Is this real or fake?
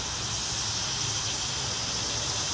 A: real